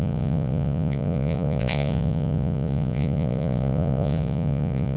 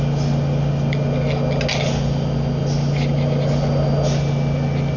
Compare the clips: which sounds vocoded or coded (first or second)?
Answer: first